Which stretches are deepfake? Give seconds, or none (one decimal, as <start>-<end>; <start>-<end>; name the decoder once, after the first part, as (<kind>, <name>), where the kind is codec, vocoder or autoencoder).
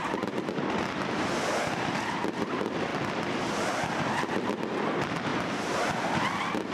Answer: none